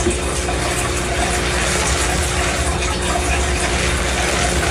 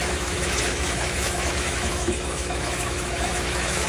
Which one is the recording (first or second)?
first